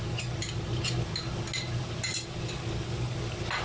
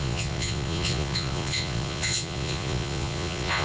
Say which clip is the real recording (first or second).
first